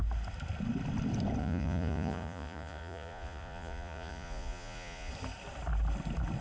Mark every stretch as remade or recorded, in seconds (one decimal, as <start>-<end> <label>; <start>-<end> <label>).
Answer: 0.0-1.4 recorded; 1.4-5.1 remade; 5.1-6.4 recorded